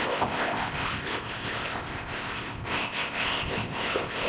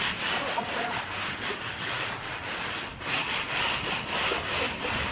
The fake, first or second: first